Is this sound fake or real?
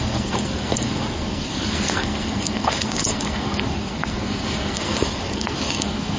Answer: fake